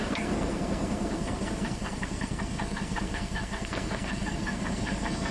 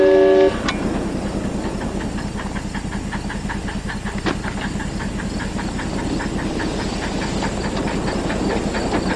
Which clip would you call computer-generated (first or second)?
first